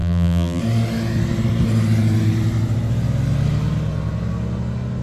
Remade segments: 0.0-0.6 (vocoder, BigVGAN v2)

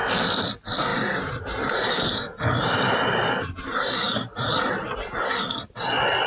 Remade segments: 0.9-4.7 (vocoder, BigVGAN v2)

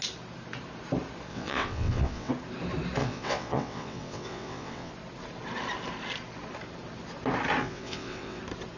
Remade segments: 1.3-2.3 (vocoder, WaveNeXt); 3.0-4.9; 7.6-8.4

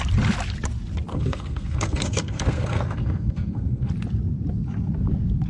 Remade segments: 1.1-3.9 (codec, SNAC)